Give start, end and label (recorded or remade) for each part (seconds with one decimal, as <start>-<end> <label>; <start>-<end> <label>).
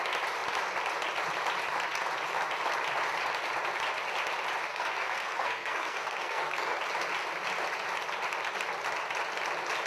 0.0-4.7 recorded; 4.7-6.8 remade; 6.8-9.9 recorded